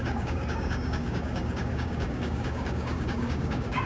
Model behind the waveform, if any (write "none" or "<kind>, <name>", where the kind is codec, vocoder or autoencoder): codec, DAC